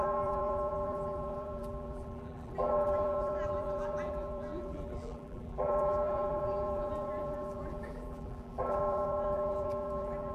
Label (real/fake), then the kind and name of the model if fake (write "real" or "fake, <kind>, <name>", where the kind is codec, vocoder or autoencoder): fake, vocoder, BigVGAN v2